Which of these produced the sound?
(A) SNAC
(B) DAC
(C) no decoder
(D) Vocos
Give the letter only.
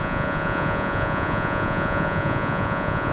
D